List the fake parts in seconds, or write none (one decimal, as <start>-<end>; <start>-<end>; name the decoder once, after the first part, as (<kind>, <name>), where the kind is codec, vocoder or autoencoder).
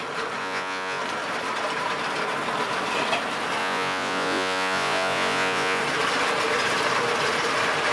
0.4-1.0 (vocoder, Vocos); 3.6-5.8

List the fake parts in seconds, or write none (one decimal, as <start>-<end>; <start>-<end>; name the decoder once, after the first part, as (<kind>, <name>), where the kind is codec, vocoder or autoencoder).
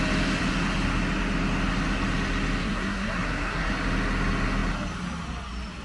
2.6-3.7 (codec, SNAC)